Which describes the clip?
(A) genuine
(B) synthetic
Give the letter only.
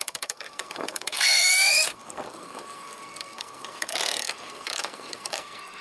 B